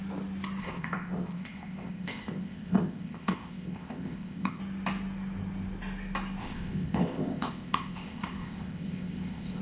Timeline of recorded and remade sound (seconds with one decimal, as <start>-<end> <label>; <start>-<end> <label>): 0.0-0.6 recorded; 0.6-4.6 remade; 4.6-6.4 recorded; 6.4-9.6 remade